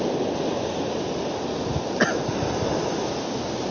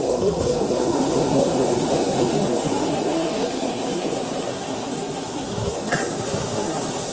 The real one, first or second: first